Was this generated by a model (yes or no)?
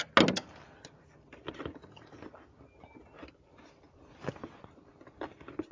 no